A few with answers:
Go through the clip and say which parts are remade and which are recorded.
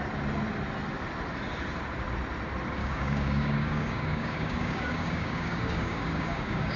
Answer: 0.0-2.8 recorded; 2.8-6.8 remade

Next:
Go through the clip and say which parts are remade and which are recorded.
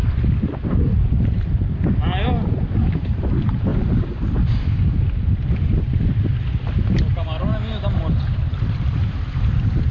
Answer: 0.0-9.9 recorded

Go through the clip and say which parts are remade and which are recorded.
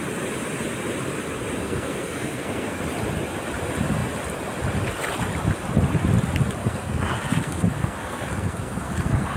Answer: 0.0-1.6 recorded; 1.6-2.8 remade; 2.8-6.6 recorded; 6.6-9.4 remade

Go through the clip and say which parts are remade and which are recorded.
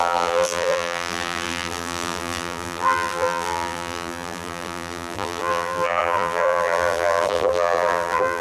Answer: 0.0-8.4 remade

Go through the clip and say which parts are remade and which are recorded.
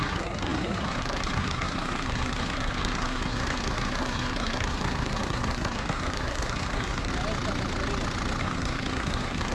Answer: 0.0-7.1 remade; 7.1-8.4 recorded; 8.4-9.5 remade